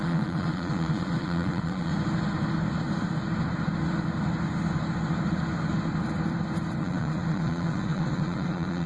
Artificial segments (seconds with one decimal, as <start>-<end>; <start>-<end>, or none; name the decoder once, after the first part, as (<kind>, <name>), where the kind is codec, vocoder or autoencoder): 0.0-1.9 (vocoder, Vocos); 6.8-8.9